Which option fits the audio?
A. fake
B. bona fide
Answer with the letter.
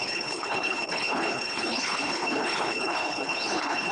A